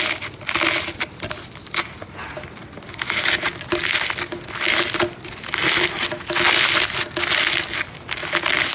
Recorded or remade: recorded